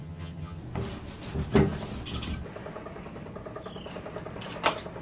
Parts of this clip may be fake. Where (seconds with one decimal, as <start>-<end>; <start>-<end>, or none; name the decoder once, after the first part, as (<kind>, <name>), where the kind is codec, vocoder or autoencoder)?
0.0-0.6 (vocoder, HiFi-GAN)

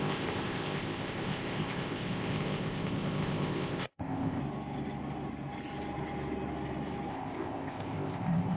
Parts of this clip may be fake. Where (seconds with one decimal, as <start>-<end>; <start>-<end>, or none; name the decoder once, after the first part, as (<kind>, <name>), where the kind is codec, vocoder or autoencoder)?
0.0-4.4 (codec, ZipCodec); 7.1-8.6

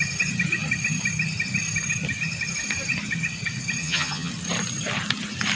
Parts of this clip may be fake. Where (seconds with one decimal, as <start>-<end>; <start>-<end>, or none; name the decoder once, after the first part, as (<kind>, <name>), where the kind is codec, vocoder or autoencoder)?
3.8-4.3 (vocoder, HiFi-GAN)

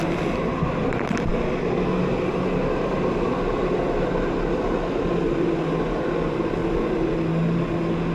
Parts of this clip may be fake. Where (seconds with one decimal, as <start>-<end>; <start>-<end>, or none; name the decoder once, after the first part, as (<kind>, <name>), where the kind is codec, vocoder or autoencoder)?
none

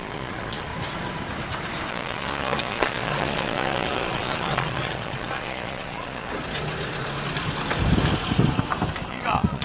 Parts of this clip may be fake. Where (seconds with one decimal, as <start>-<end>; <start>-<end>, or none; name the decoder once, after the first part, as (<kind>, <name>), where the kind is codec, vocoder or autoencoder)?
0.0-0.7 (vocoder, Vocos); 1.9-6.3; 9.1-9.6

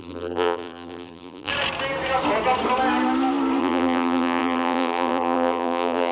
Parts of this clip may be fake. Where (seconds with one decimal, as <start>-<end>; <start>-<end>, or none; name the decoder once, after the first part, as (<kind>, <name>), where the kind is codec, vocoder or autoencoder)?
0.0-1.5 (vocoder, BigVGAN v2); 3.6-6.1